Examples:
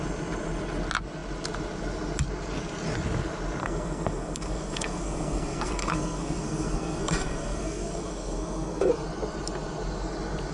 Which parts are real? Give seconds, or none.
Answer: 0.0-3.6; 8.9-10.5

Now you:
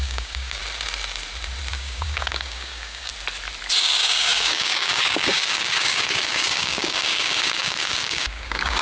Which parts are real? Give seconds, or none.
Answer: 0.6-1.7; 3.1-3.8